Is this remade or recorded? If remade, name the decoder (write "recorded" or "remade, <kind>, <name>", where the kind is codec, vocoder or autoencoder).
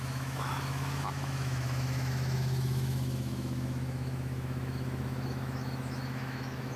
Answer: remade, autoencoder, DAC-VAE